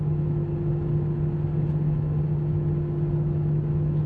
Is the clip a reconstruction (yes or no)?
no